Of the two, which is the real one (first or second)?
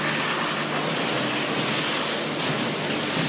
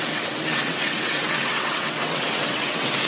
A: first